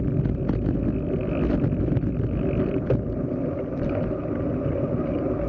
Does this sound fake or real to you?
real